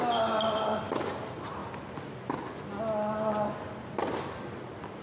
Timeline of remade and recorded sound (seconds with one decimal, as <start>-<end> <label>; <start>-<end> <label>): 0.0-5.0 recorded